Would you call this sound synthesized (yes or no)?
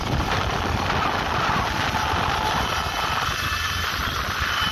no